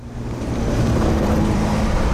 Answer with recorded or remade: remade